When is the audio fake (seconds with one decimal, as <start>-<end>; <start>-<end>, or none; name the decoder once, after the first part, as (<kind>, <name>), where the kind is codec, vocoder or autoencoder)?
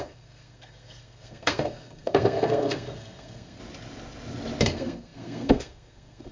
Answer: 0.0-3.6 (codec, SNAC); 4.6-6.3